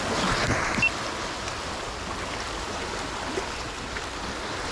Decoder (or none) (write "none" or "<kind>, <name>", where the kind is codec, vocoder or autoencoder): none